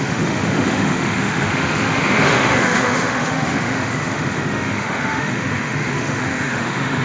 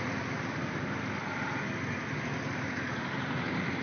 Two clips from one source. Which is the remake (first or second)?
first